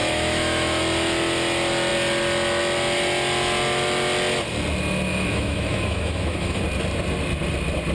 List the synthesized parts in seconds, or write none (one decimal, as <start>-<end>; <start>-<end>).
0.0-0.8; 5.1-6.6